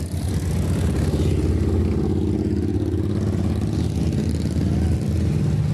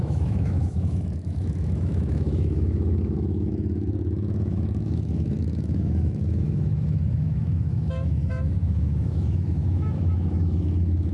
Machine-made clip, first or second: second